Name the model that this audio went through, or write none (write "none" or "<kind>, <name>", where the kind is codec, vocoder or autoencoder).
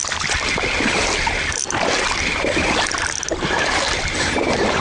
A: none